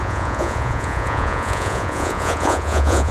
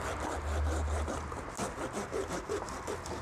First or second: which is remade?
first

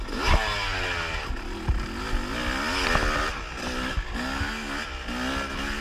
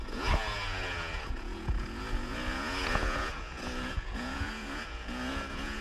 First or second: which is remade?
second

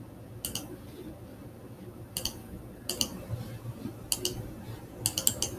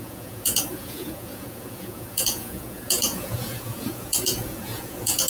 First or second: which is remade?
second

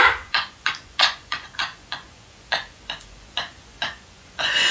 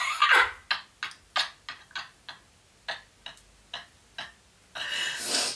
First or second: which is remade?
first